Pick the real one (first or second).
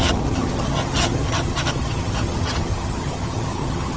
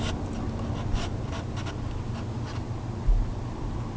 second